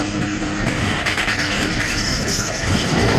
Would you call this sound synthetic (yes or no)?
yes